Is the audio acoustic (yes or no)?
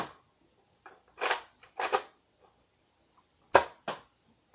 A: yes